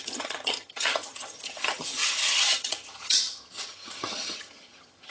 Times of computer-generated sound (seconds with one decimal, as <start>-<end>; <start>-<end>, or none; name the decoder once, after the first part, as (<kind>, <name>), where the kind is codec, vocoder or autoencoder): 0.0-5.1 (vocoder, HiFi-GAN)